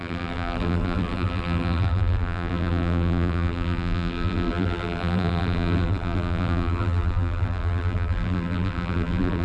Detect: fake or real fake